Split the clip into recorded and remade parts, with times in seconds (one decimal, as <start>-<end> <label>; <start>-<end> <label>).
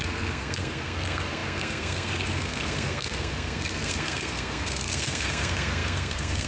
0.0-6.5 remade